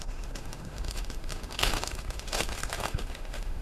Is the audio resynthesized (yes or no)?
yes